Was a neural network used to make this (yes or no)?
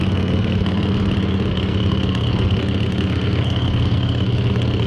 yes